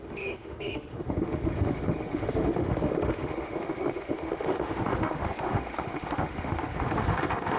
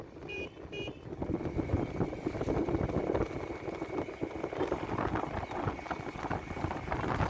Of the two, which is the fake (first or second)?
first